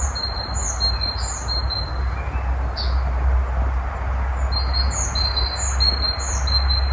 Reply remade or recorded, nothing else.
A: recorded